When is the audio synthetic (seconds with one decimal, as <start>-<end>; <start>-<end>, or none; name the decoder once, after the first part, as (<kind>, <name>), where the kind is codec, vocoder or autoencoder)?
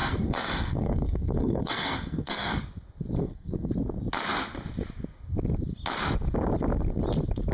0.0-2.6 (codec, SNAC); 3.2-3.7